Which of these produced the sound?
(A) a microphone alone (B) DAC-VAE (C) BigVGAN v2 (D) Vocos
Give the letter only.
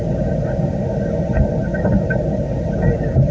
A